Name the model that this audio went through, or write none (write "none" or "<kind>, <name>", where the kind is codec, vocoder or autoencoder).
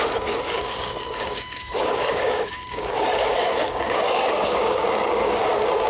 codec, DAC